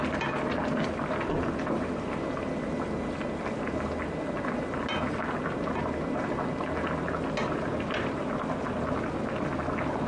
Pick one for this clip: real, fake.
real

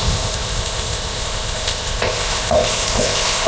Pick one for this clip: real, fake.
fake